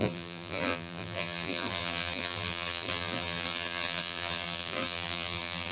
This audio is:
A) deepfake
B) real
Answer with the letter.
A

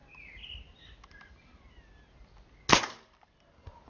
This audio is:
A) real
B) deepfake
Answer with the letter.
A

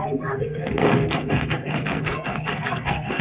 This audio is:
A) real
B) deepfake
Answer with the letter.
B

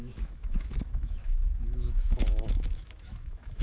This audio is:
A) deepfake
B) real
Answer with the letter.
A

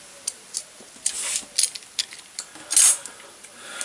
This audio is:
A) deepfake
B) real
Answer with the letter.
B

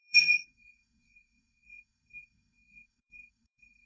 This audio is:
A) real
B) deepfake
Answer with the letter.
B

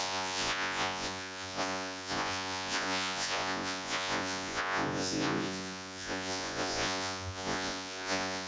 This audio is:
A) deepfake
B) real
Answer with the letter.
A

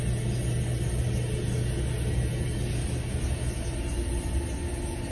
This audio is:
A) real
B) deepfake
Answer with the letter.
A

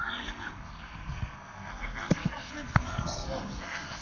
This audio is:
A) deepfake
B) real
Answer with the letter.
A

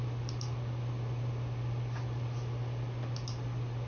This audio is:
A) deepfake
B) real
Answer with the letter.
B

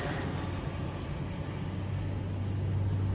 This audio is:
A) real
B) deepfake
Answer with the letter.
A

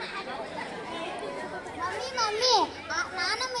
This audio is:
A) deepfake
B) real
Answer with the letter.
A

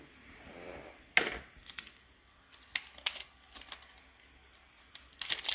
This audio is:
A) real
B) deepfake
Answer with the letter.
A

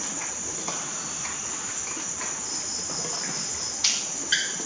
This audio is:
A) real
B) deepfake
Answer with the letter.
A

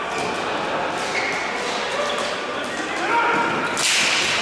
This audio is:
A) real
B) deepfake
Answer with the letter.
A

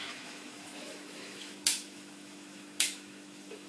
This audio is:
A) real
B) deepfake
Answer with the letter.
B